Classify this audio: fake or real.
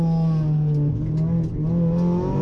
real